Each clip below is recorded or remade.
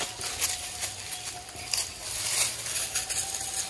recorded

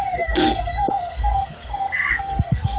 remade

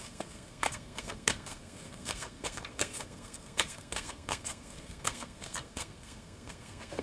remade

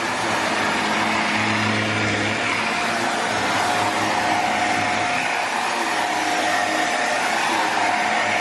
recorded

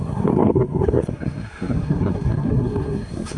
remade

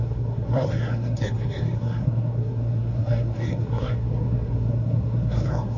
remade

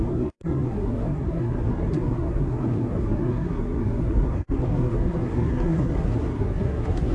remade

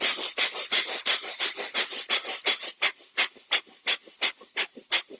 recorded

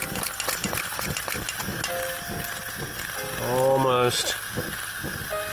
recorded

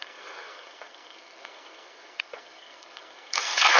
remade